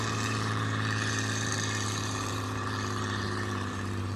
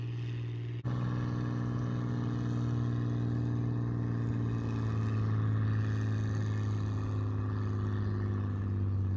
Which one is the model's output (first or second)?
first